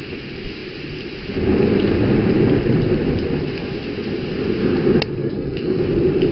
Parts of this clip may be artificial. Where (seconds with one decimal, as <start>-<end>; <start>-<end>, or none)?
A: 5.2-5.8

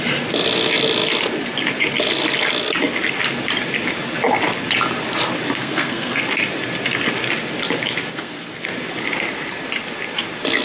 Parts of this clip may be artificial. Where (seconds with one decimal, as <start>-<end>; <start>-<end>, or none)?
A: 5.6-6.2; 8.1-8.7

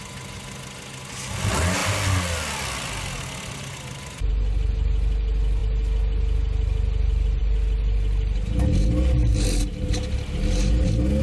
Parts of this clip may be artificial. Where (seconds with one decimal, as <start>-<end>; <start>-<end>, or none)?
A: none

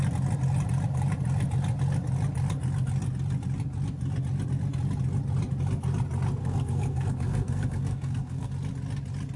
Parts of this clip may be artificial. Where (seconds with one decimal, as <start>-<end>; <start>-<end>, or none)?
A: 6.4-8.5

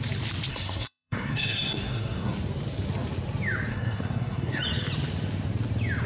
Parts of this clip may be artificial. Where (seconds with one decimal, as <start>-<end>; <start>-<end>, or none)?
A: 0.5-2.3; 3.7-4.6

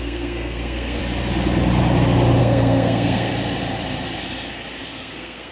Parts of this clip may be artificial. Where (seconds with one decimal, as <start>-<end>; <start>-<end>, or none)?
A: 0.0-1.0; 2.4-3.3; 4.8-5.5